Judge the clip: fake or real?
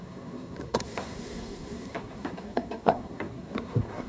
fake